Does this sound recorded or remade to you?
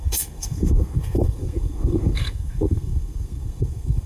remade